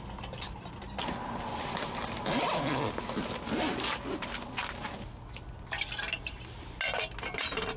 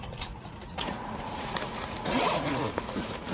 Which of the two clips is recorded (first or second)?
first